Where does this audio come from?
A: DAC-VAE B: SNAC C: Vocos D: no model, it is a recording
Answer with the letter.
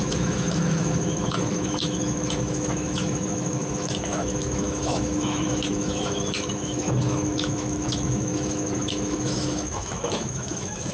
A